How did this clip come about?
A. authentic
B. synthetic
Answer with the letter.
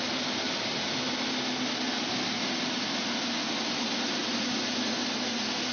A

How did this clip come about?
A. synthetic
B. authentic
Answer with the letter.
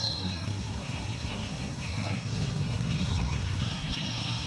A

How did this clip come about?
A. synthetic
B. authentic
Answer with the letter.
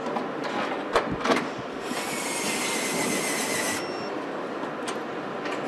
B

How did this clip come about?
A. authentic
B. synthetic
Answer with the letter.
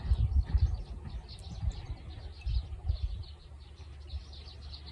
A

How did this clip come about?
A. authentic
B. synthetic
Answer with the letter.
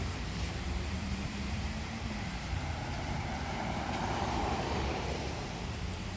B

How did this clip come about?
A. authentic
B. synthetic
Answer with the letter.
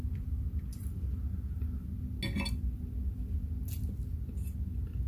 A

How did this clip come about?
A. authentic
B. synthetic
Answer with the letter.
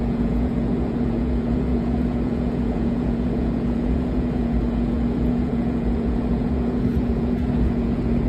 B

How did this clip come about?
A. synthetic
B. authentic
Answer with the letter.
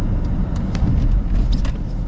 B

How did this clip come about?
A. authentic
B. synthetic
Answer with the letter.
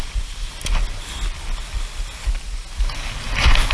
A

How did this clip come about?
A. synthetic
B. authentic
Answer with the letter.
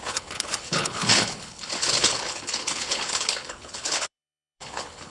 A